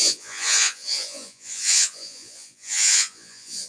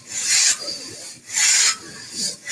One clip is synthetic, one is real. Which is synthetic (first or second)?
first